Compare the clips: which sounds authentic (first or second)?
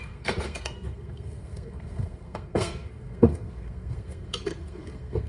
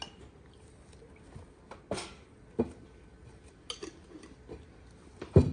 second